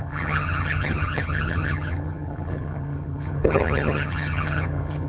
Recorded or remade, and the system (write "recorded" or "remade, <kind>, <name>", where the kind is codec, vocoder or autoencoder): remade, vocoder, HiFi-GAN